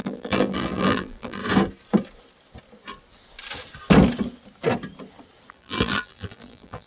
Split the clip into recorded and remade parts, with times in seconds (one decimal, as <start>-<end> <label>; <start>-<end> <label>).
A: 0.0-1.4 remade; 1.4-5.5 recorded; 5.5-6.9 remade